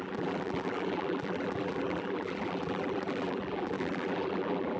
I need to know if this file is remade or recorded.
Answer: remade